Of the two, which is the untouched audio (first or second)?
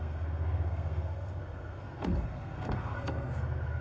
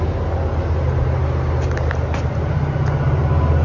second